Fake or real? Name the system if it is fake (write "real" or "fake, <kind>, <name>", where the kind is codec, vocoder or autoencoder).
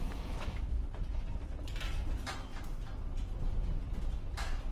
fake, vocoder, BigVGAN v2